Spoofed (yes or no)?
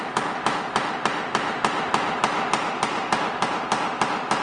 no